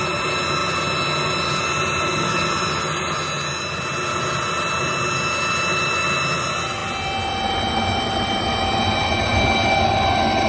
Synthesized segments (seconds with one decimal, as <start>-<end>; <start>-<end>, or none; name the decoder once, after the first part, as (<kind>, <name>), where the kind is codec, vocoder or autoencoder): none